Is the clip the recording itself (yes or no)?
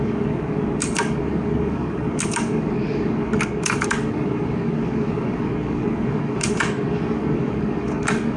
no